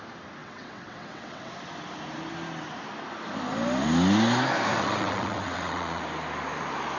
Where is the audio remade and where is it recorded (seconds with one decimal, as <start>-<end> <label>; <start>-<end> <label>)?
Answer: 0.0-0.4 recorded; 0.4-1.5 remade; 1.5-4.7 recorded; 4.7-6.0 remade; 6.0-7.0 recorded